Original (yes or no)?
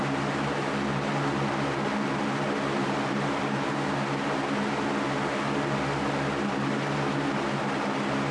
yes